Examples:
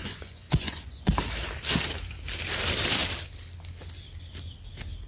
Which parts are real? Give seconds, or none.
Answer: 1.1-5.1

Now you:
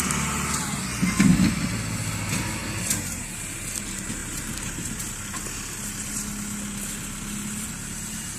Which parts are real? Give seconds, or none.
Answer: 0.0-4.2; 4.8-8.4

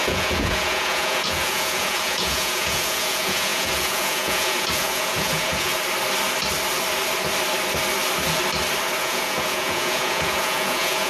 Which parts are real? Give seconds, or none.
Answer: 5.7-9.0

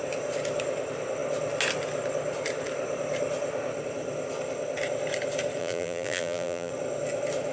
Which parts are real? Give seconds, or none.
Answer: 0.0-5.6; 6.7-7.5

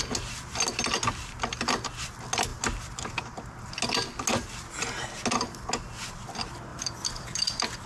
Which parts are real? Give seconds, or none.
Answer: 0.0-6.7

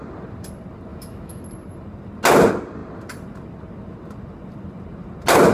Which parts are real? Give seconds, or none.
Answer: 0.0-0.9; 1.4-5.5

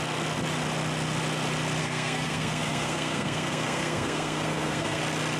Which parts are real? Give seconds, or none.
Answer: 0.0-1.8; 5.0-5.4